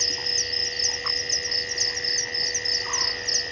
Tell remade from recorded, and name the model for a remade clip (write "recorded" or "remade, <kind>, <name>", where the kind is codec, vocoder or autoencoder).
recorded